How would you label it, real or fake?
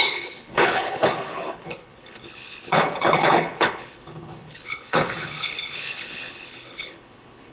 fake